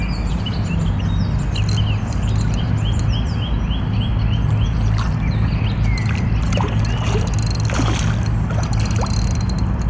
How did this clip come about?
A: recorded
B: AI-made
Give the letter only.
A